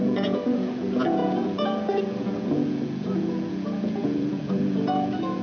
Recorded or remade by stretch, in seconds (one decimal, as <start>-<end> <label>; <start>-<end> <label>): 0.0-5.4 remade